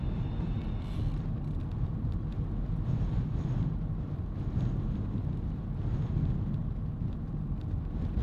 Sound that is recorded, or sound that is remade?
recorded